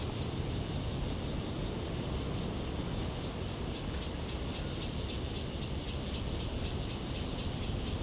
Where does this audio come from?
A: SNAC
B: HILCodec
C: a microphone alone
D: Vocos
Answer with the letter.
C